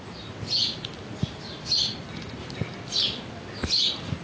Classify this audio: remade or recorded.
recorded